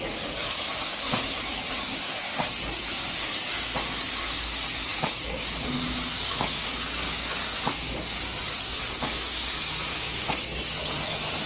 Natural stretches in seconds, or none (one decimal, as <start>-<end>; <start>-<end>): none

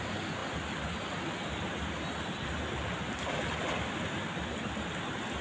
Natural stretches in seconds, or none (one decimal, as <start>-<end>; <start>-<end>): 0.0-5.4

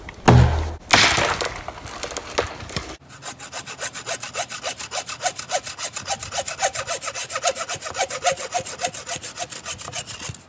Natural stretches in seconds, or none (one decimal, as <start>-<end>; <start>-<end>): 0.0-10.5